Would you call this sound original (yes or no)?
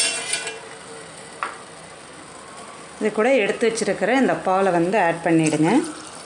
yes